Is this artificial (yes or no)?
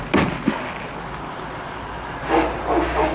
no